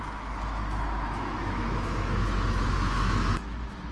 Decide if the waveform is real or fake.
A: fake